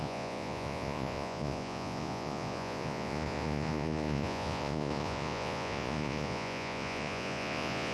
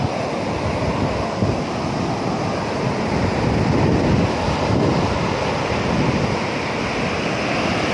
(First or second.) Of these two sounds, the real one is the second